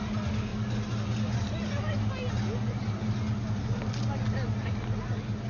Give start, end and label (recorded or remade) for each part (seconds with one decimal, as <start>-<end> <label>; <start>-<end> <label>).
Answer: 0.0-5.5 recorded